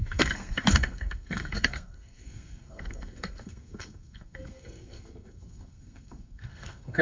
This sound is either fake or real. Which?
fake